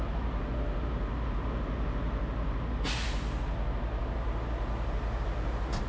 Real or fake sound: real